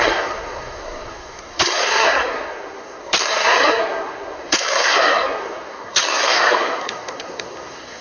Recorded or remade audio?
remade